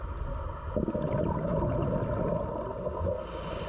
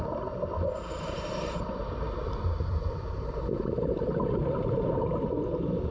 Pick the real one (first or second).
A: first